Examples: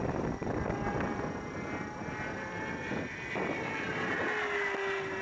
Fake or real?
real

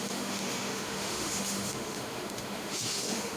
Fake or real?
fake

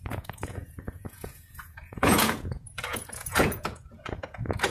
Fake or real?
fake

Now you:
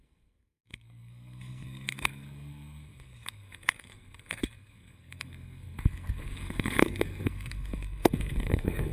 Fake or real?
fake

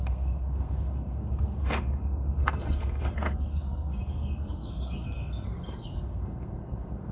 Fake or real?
fake